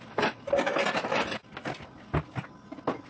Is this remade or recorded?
recorded